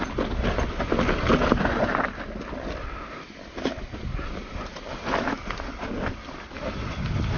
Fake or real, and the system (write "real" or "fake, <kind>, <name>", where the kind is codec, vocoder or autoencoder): real